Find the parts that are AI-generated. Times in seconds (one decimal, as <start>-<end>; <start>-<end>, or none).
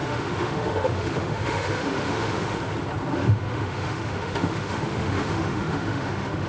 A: 0.0-2.6; 3.1-6.5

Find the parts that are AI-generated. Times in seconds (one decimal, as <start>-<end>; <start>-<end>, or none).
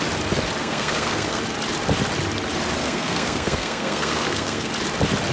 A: 0.6-1.4; 2.8-4.7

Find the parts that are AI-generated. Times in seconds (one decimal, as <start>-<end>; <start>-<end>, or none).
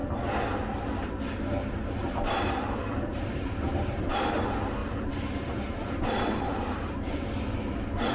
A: 1.6-4.1; 4.8-7.2